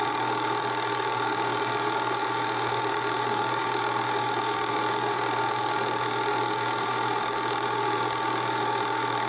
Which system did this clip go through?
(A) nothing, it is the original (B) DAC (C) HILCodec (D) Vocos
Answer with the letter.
B